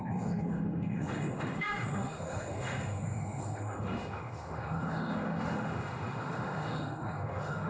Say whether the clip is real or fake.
fake